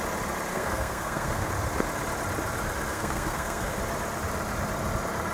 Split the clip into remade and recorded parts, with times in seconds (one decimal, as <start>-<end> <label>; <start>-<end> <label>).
0.0-0.5 recorded; 0.5-1.5 remade; 1.5-2.9 recorded; 2.9-3.8 remade; 3.8-5.3 recorded